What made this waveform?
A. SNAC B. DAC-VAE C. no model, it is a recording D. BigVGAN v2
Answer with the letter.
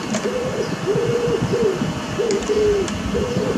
C